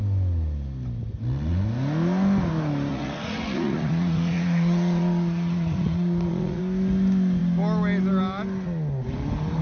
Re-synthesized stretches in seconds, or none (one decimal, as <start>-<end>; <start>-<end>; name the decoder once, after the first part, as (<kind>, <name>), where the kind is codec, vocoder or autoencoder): 2.9-6.6 (vocoder, Vocos)